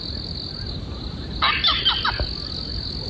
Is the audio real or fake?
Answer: real